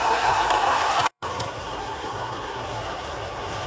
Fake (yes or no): yes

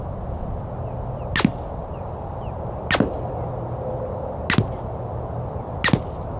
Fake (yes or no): no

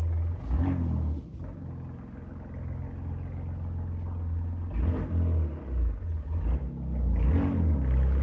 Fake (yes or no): no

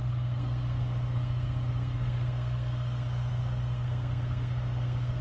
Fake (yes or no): yes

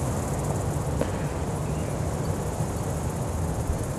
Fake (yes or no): no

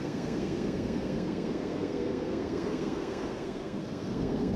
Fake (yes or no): yes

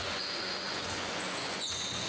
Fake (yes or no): yes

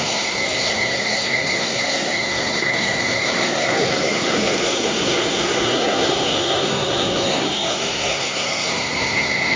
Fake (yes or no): yes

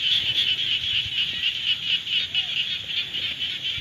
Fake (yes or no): no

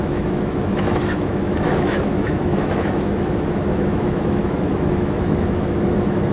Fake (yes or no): yes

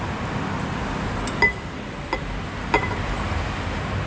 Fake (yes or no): no